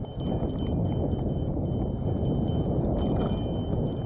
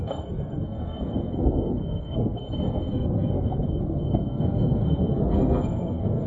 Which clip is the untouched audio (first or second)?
first